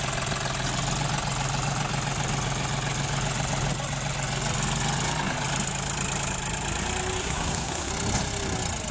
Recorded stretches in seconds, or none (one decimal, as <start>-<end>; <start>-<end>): 0.0-7.2; 7.9-8.9